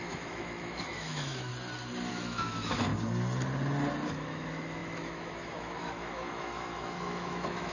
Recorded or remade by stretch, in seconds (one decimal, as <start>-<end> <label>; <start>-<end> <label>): 0.0-1.5 remade; 1.5-2.1 recorded; 2.1-2.9 remade; 2.9-4.1 recorded; 4.1-7.7 remade